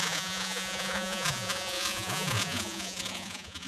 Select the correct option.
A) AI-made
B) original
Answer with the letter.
A